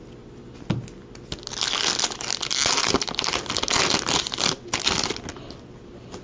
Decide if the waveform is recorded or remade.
recorded